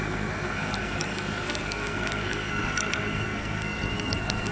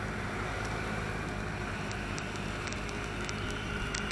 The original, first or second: second